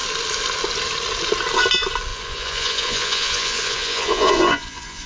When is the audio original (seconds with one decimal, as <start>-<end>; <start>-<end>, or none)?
0.0-2.1